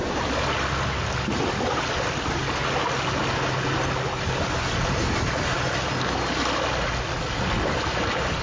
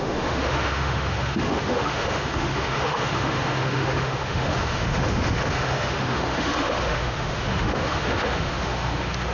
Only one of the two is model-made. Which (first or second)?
second